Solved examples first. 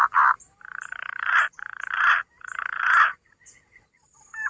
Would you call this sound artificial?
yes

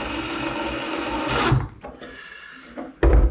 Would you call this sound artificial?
no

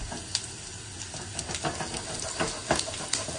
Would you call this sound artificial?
no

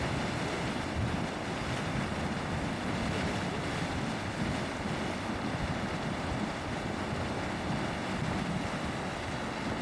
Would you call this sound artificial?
no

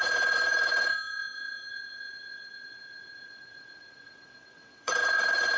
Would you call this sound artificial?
yes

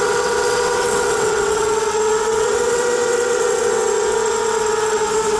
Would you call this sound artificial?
yes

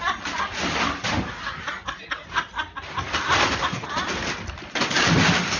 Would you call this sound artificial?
no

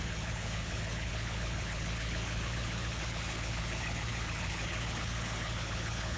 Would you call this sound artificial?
yes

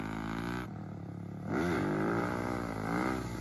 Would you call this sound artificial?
yes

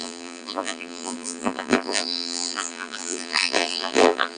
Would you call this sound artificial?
yes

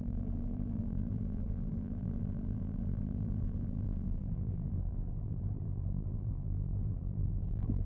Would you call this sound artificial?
yes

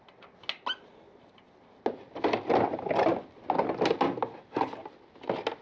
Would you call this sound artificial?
no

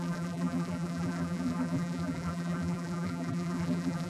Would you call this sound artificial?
yes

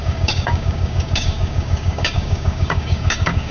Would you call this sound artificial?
yes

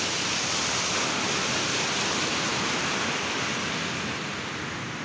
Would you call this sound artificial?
no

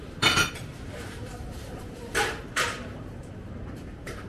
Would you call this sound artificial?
yes